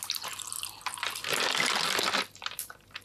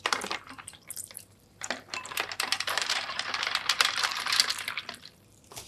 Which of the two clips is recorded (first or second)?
first